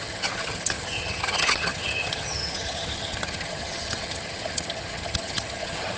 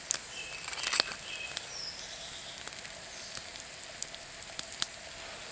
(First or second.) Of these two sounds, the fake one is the first